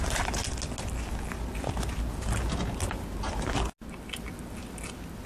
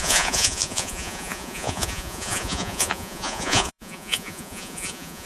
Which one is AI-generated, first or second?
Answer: second